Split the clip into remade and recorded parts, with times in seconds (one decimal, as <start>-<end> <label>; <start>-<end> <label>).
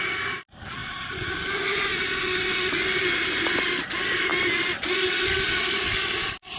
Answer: 0.0-6.6 recorded